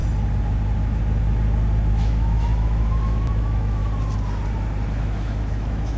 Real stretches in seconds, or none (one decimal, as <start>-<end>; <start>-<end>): 0.0-1.9; 3.8-5.0

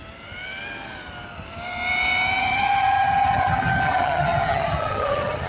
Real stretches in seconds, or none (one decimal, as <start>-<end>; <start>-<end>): 0.0-2.4